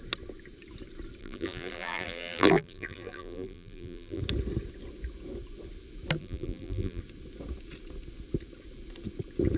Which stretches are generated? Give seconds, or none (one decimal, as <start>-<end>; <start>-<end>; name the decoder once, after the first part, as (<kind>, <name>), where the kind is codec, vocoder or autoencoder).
1.2-4.2 (vocoder, BigVGAN v2); 6.2-7.0